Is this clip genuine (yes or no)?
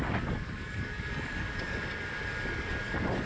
no